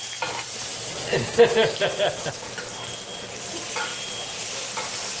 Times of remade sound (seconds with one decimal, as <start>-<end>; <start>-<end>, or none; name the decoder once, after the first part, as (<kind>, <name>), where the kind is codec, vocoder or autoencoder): none